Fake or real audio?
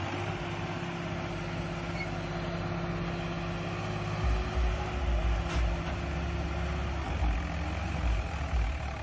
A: real